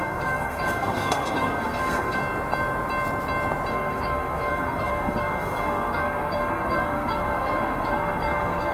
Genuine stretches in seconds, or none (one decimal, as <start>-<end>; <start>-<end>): 2.2-3.7